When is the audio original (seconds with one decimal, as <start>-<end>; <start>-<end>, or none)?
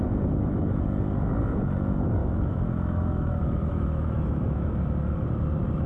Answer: 0.0-2.2; 4.7-5.9